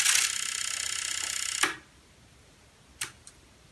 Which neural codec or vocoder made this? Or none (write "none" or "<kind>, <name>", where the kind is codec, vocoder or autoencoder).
none